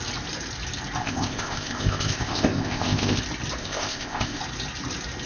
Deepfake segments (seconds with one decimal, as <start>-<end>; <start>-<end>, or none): 1.0-3.2; 3.6-4.4